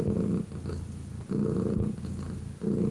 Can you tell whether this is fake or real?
real